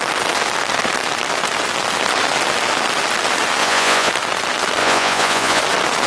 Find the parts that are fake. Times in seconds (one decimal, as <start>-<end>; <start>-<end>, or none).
3.6-4.1; 4.8-5.6

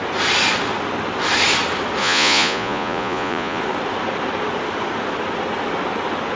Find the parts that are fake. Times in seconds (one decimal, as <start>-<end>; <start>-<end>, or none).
2.0-3.6